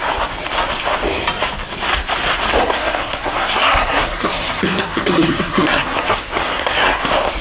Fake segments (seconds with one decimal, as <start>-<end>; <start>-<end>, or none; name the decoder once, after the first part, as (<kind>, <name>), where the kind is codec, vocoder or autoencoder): 2.6-7.0 (codec, SNAC)

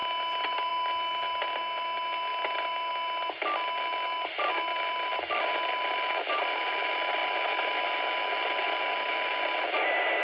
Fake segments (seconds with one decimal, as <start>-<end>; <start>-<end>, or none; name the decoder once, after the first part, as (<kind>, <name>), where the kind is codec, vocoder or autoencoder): none